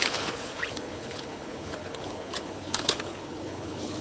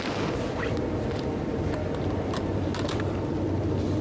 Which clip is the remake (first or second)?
first